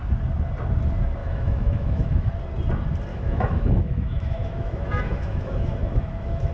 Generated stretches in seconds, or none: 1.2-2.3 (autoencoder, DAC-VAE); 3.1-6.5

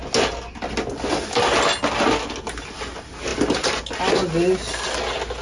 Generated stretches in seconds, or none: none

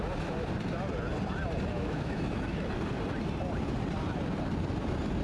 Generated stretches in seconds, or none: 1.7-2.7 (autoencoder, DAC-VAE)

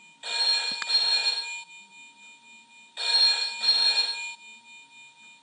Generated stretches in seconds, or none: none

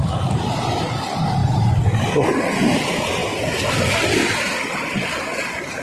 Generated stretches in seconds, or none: none

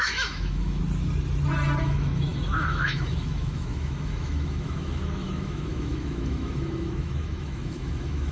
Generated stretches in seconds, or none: 0.0-0.8 (autoencoder, DAC-VAE); 1.8-8.3